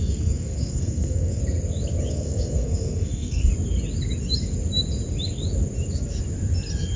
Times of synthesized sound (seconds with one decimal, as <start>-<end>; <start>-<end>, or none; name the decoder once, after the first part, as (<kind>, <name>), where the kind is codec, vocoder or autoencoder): 0.0-1.4 (codec, SNAC); 2.1-3.5